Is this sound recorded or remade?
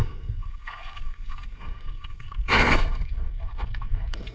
remade